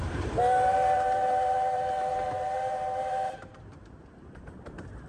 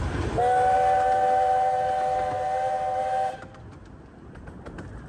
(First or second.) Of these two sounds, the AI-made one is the first